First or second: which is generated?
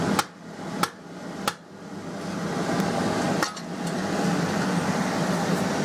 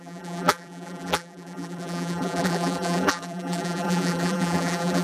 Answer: second